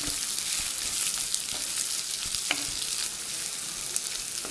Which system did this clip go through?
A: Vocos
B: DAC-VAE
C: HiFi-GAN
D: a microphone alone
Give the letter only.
D